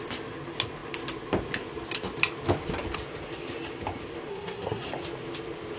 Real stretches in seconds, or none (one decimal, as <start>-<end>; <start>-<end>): 0.0-4.3; 4.9-5.8